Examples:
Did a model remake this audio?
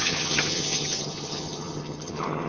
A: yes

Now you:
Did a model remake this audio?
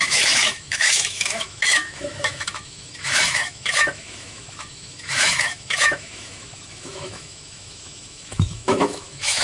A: yes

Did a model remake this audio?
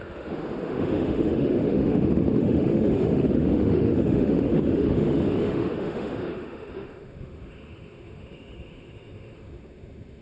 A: yes